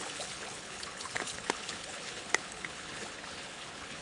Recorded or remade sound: remade